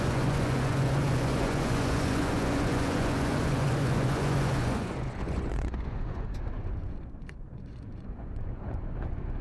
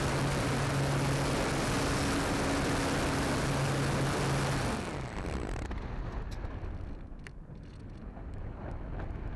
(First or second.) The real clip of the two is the second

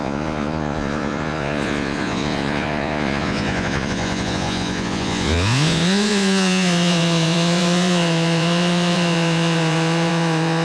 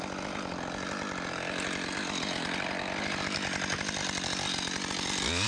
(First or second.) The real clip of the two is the second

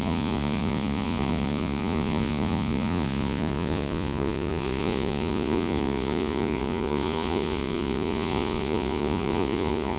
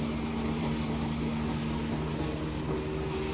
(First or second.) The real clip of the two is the second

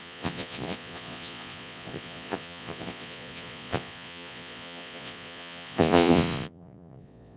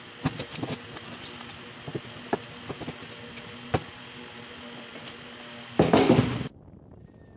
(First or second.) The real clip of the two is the second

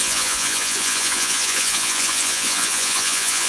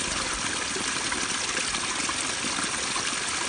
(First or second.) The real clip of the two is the second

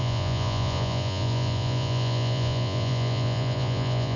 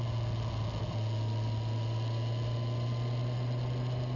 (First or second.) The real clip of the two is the second